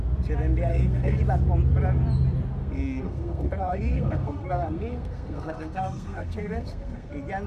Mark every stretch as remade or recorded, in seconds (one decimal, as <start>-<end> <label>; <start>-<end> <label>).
0.0-0.7 recorded; 0.7-1.2 remade; 1.2-2.6 recorded; 2.6-7.1 remade; 7.1-7.5 recorded